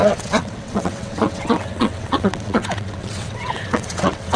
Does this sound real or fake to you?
fake